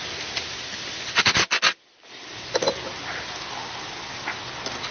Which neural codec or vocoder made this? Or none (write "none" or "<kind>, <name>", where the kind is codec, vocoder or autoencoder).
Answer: none